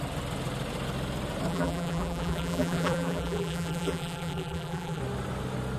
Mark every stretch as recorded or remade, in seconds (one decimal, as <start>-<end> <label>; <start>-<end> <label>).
0.0-1.5 recorded; 1.5-5.0 remade; 5.0-5.8 recorded